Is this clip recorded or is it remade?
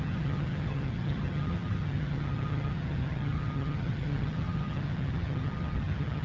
remade